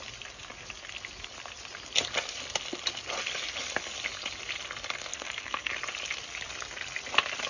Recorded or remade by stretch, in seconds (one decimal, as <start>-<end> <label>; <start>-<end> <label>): 0.0-5.1 recorded; 5.1-5.7 remade; 5.7-7.5 recorded